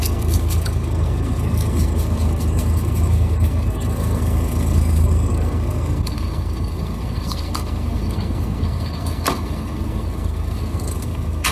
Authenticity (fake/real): fake